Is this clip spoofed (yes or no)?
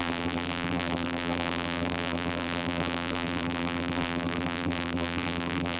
yes